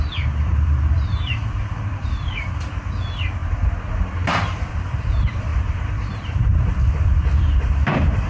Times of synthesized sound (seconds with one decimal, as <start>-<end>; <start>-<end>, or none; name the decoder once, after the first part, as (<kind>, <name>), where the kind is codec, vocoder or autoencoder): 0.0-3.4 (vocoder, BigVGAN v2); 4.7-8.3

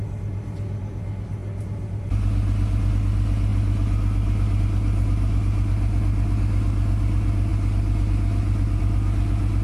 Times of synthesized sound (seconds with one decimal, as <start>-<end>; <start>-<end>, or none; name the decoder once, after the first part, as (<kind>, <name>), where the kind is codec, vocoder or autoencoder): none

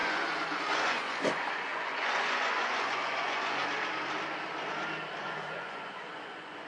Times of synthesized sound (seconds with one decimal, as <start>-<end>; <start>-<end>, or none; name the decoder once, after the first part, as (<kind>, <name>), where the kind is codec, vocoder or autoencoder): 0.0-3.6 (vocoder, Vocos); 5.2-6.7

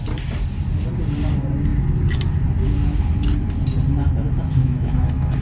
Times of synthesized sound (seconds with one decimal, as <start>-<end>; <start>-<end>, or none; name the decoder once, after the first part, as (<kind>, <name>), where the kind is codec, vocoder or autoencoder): 4.6-5.4 (autoencoder, DAC-VAE)